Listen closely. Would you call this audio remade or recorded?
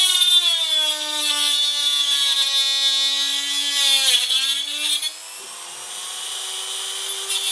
recorded